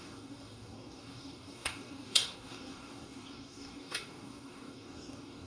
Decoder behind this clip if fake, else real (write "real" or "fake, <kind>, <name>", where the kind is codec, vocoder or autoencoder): fake, codec, DAC